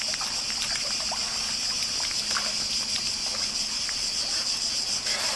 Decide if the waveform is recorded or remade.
recorded